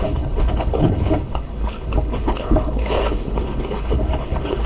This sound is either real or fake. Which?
fake